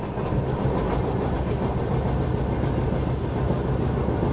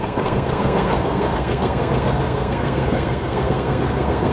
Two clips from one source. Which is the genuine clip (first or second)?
first